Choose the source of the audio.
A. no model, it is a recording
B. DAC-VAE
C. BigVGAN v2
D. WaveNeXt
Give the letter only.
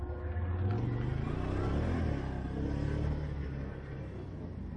A